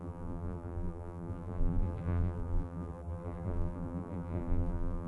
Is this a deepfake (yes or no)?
yes